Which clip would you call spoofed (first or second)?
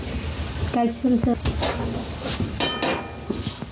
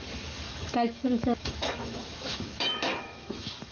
second